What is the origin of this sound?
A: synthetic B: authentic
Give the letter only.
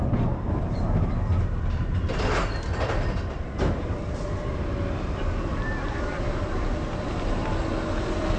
B